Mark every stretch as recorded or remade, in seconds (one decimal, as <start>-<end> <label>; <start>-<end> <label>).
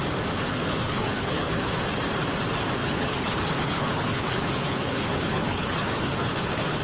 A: 0.0-0.5 recorded; 0.5-1.7 remade; 1.7-2.8 recorded; 2.8-6.8 remade